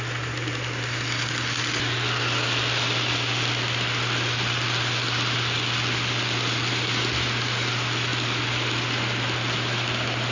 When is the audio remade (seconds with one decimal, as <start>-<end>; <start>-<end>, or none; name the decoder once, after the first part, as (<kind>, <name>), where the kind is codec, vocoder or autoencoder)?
none